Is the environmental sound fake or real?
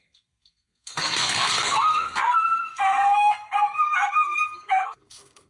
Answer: fake